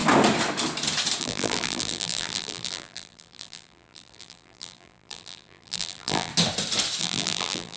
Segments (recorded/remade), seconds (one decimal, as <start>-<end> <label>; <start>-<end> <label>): 0.0-1.2 recorded; 1.2-6.3 remade; 6.3-7.0 recorded; 7.0-7.8 remade